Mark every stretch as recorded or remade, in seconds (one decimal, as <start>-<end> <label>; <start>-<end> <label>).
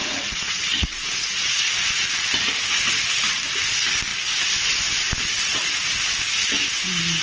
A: 0.0-1.5 remade; 1.5-7.2 recorded